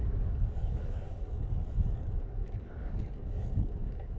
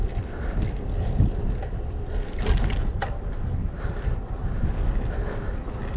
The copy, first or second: first